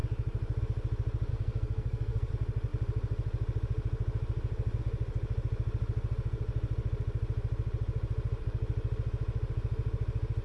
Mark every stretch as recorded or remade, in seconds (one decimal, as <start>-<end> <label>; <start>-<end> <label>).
0.0-1.3 recorded; 1.3-2.3 remade; 2.3-10.4 recorded